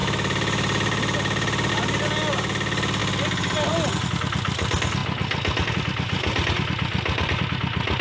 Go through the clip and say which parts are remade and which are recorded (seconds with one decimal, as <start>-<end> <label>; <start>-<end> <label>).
0.0-8.0 recorded